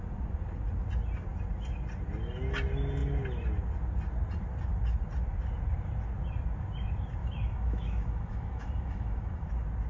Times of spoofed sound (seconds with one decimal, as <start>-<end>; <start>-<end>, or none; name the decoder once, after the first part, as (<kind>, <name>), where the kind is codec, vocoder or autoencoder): 7.2-9.5 (autoencoder, DAC-VAE)